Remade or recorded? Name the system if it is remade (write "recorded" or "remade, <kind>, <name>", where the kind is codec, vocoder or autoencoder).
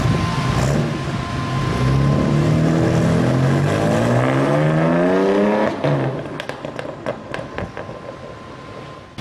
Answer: recorded